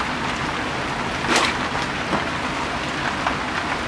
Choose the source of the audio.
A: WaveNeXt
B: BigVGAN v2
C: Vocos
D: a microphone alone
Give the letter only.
D